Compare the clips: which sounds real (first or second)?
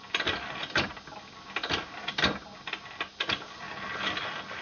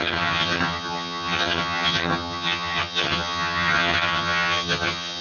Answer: first